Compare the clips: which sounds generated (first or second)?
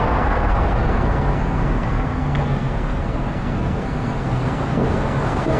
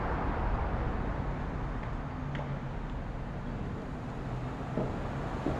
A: first